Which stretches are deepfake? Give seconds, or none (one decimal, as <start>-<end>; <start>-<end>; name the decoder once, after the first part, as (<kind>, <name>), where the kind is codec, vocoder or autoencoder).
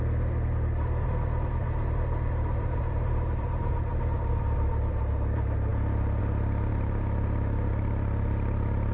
1.6-5.0 (vocoder, BigVGAN v2)